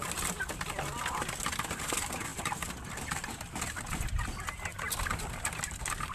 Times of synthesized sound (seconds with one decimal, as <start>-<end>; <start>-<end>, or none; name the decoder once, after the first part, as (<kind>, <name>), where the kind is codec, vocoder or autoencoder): none